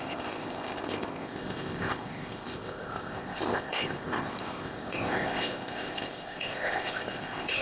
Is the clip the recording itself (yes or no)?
no